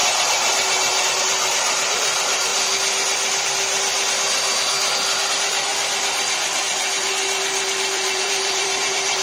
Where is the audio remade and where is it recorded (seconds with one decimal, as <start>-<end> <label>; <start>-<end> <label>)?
0.0-2.5 remade; 2.5-5.3 recorded; 5.3-5.7 remade; 5.7-7.8 recorded; 7.8-9.2 remade